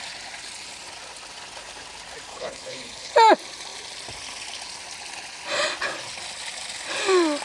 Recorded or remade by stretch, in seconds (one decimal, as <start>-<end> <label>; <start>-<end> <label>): 0.0-2.3 recorded; 2.3-3.1 remade; 3.1-7.4 recorded